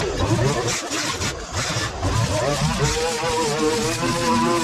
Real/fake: real